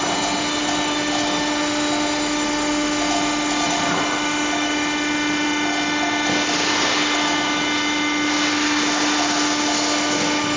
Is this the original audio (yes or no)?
yes